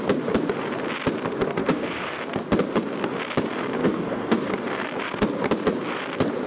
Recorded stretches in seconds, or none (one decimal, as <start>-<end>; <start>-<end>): 0.0-1.6; 2.2-3.8; 4.5-6.5